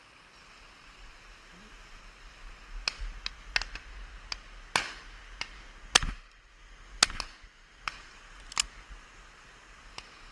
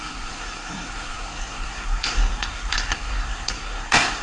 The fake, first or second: second